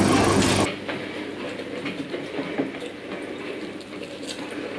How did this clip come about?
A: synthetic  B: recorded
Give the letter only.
B